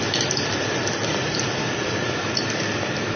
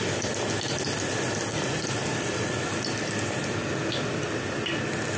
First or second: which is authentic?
second